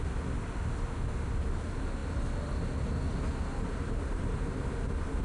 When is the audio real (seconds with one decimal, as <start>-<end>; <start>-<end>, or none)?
0.0-5.2